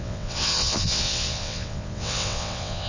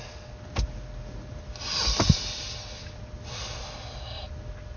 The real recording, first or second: second